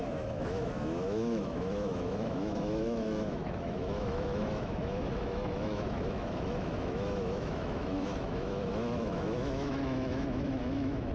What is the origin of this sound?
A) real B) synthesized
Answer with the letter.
B